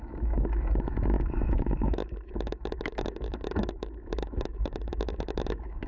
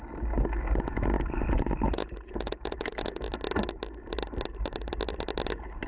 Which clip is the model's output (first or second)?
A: first